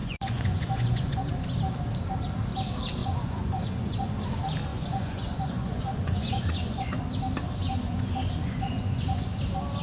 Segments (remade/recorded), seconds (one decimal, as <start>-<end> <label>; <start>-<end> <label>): 0.0-1.3 remade; 1.3-3.0 recorded; 3.0-4.1 remade; 4.1-4.7 recorded; 4.7-7.0 remade; 7.0-7.6 recorded; 7.6-9.3 remade; 9.3-9.8 recorded